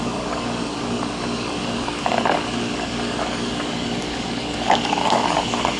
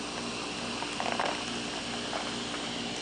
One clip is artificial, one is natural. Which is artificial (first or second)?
first